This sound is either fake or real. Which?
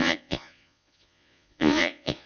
fake